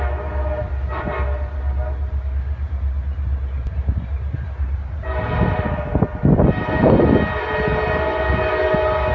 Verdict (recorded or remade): recorded